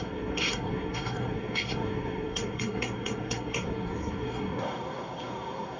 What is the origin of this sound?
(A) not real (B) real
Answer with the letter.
A